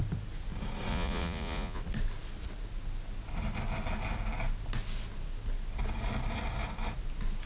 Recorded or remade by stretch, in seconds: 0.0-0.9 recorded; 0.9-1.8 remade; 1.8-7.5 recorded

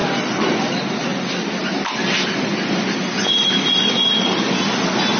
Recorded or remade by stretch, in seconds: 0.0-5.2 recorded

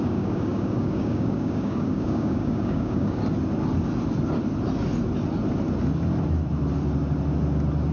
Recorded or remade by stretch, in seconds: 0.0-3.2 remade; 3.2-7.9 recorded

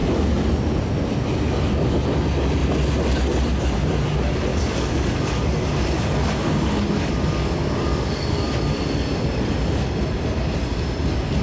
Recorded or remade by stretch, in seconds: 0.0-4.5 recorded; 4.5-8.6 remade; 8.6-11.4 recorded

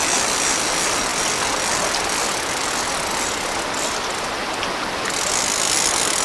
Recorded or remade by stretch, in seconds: 0.0-6.2 recorded

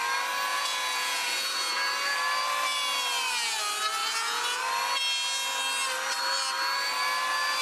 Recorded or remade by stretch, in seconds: 0.0-0.5 recorded; 0.5-1.7 remade; 1.7-4.0 recorded; 4.0-4.6 remade; 4.6-7.6 recorded

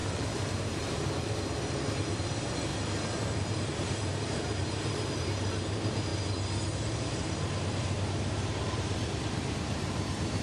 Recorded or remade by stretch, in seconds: 0.0-2.7 remade; 2.7-3.5 recorded; 3.5-6.1 remade; 6.1-6.9 recorded; 6.9-10.4 remade

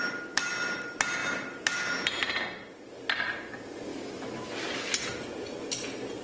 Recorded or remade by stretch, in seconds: 0.0-3.9 recorded; 3.9-4.5 remade; 4.5-6.2 recorded